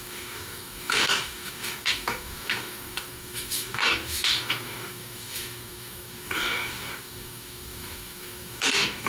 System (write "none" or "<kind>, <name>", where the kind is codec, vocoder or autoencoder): codec, DAC